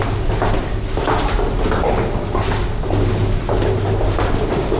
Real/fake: real